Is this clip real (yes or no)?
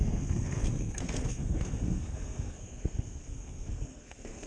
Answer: no